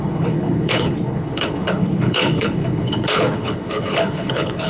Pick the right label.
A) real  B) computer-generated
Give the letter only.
B